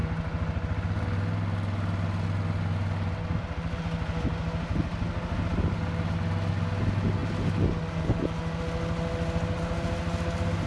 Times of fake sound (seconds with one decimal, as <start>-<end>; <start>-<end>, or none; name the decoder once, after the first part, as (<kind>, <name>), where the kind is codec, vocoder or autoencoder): none